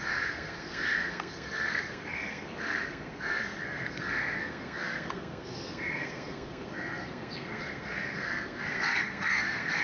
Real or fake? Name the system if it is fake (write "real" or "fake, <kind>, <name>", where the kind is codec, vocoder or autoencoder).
fake, codec, SNAC